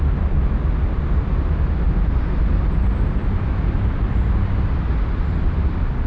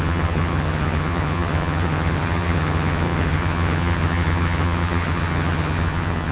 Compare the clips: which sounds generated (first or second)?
second